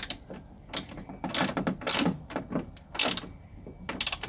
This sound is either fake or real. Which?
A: real